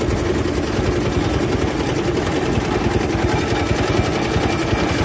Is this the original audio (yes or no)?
yes